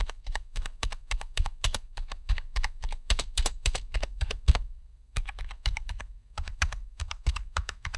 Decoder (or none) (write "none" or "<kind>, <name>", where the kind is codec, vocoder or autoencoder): codec, SNAC